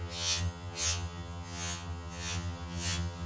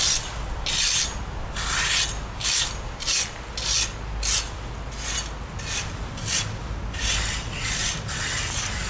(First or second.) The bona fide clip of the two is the second